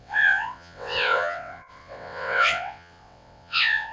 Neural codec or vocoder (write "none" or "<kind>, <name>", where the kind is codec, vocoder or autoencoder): vocoder, WaveNeXt